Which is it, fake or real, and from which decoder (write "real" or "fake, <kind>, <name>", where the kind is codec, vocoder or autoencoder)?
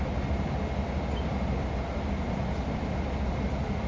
real